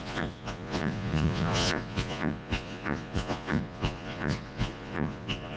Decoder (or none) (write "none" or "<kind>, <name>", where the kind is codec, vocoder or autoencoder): vocoder, Vocos